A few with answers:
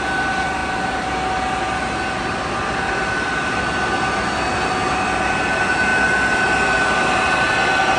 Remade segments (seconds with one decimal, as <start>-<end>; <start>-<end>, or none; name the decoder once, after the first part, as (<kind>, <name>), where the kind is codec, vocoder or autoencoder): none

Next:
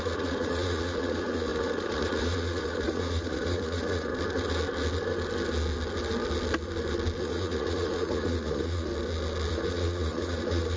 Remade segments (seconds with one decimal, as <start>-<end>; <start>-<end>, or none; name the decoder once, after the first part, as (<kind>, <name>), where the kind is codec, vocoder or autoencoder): 0.0-4.1 (vocoder, Vocos); 7.2-8.9; 9.5-10.8

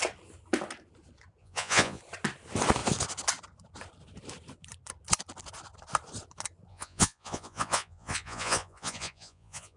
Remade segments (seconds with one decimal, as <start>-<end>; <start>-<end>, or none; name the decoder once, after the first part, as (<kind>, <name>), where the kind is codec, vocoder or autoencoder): 1.4-2.0 (vocoder, Vocos); 6.7-9.8